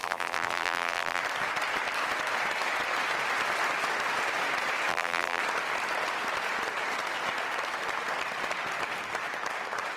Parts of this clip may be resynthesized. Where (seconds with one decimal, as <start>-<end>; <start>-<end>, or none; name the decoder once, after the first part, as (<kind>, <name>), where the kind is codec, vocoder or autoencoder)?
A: 0.0-1.2 (vocoder, BigVGAN v2); 4.9-5.4